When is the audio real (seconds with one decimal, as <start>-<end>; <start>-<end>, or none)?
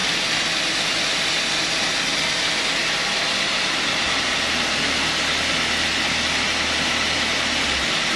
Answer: 0.0-8.2